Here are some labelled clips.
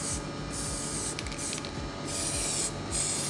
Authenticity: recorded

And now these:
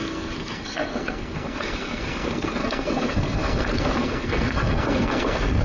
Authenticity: remade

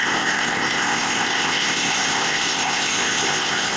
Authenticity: remade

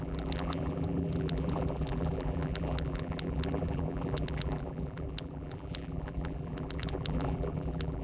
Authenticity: remade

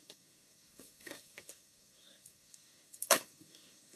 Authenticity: remade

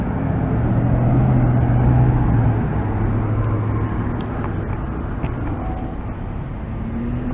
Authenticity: recorded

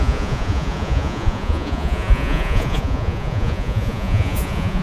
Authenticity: remade